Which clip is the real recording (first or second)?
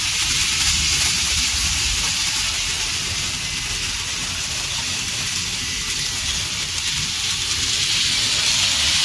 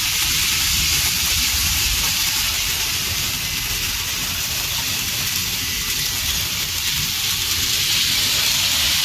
first